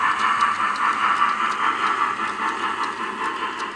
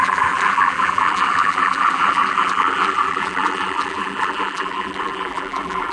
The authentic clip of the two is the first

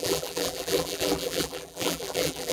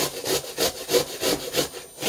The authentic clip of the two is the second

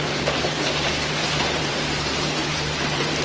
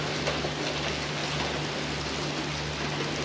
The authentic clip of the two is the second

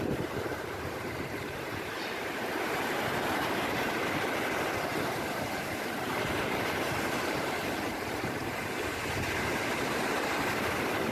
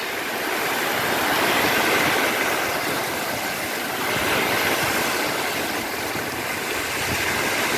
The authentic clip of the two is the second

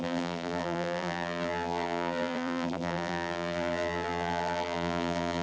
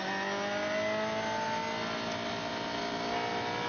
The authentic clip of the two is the second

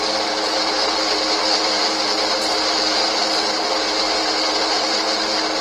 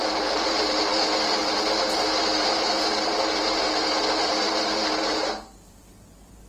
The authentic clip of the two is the first